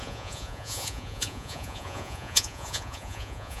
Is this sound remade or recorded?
remade